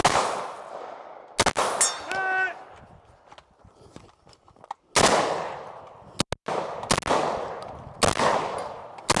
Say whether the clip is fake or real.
real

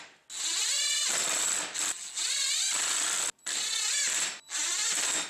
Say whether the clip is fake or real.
real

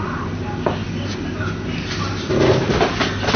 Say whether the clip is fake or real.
real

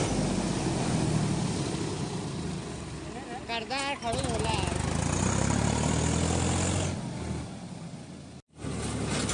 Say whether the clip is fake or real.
real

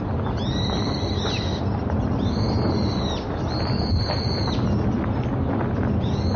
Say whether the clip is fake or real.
real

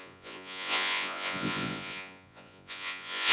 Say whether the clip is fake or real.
fake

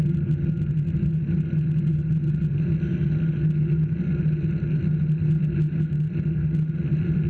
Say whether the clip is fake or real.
real